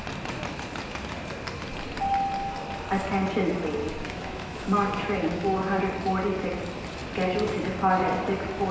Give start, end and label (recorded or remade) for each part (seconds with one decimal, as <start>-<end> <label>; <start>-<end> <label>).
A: 0.0-3.8 recorded; 3.8-5.8 remade; 5.8-8.7 recorded